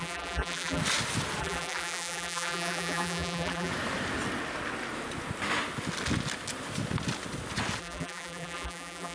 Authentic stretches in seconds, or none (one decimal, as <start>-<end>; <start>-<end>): 0.8-1.4; 3.7-7.8